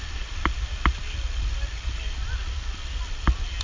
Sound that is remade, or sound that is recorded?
recorded